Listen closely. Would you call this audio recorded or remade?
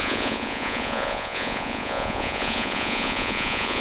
remade